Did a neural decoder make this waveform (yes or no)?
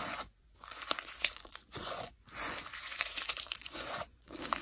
yes